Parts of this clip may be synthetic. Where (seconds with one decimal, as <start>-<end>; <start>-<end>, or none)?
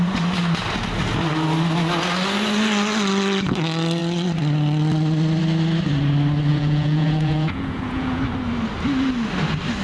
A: 6.5-8.2